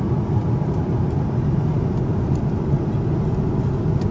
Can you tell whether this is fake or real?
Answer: real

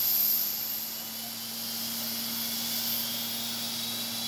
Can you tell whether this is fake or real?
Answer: real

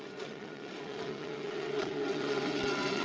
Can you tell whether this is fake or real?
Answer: fake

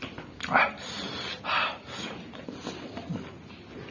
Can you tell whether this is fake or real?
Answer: real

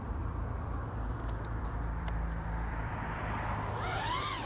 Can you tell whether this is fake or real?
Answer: fake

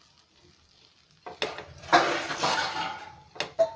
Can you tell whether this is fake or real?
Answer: real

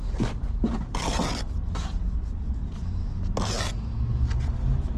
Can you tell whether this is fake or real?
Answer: real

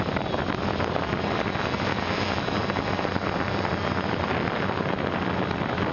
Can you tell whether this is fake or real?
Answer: real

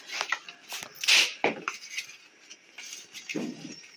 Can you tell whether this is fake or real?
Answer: real